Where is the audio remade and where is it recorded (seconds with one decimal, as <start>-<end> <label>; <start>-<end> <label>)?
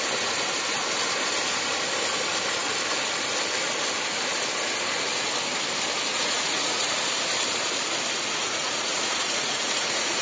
0.0-6.1 recorded; 6.1-6.9 remade; 6.9-8.4 recorded; 8.4-10.2 remade